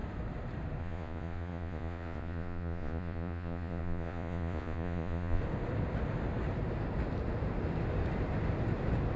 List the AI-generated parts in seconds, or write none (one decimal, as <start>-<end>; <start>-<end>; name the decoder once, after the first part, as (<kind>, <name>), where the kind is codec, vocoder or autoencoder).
0.8-5.4 (vocoder, Vocos)